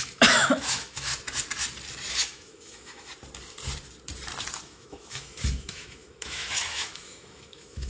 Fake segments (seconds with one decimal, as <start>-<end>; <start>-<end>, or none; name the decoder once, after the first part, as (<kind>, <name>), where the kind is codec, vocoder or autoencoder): 0.0-1.1 (autoencoder, DAC-VAE); 2.1-3.1; 4.6-7.9

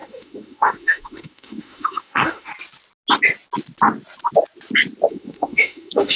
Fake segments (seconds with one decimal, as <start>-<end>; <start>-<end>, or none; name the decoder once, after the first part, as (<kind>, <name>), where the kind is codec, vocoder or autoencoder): 0.0-2.5 (autoencoder, DAC-VAE); 5.1-6.2

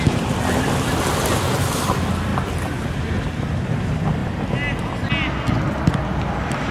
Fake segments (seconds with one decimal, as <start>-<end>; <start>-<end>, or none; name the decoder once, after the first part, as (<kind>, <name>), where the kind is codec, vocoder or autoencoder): none